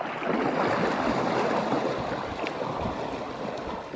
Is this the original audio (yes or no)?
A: yes